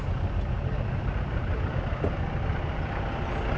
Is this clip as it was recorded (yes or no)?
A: yes